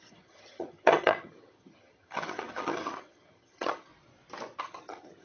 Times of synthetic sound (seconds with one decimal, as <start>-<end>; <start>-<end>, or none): 0.0-3.9; 4.6-5.2